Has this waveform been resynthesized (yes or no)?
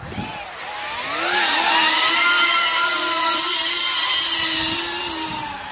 no